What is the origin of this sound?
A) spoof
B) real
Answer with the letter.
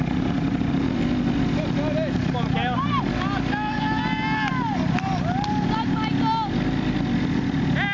B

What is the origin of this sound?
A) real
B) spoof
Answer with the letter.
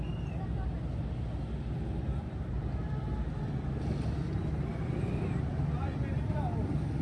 A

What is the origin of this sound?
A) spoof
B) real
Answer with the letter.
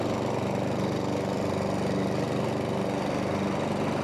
B